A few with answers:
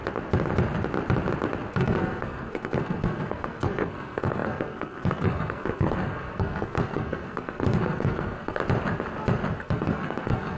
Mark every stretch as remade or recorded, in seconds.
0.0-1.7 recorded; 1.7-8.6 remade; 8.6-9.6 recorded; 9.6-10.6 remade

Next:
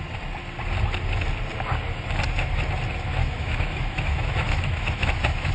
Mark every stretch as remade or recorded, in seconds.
0.0-3.1 recorded; 3.1-5.5 remade

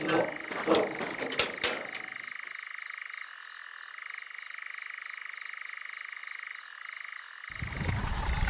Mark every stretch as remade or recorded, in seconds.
0.0-8.5 recorded

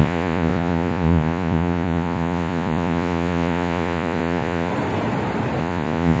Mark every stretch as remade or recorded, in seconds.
0.0-4.7 remade; 4.7-5.6 recorded; 5.6-6.2 remade

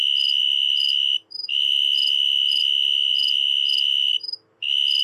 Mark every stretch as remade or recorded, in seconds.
0.0-0.4 recorded; 0.4-2.6 remade; 2.6-3.1 recorded; 3.1-4.6 remade; 4.6-5.0 recorded

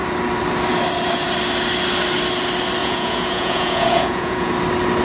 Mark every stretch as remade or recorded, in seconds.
0.0-2.8 recorded; 2.8-4.5 remade; 4.5-5.0 recorded

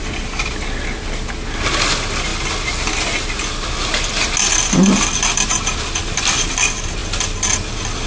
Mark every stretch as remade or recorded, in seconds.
0.0-8.1 recorded

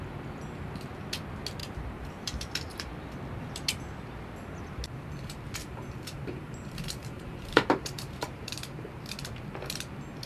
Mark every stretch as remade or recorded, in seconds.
0.0-1.6 recorded; 1.6-2.9 remade; 2.9-5.6 recorded; 5.6-8.4 remade; 8.4-10.3 recorded